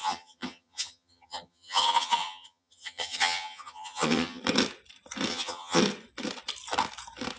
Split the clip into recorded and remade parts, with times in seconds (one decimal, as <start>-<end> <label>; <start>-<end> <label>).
0.0-4.4 remade; 4.4-5.3 recorded; 5.3-5.8 remade; 5.8-7.4 recorded